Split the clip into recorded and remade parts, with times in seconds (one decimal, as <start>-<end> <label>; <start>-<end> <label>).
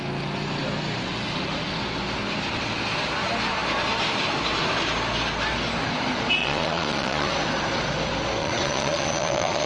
0.0-6.4 recorded; 6.4-7.3 remade; 7.3-8.4 recorded; 8.4-9.7 remade